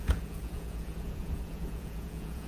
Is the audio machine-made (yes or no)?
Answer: yes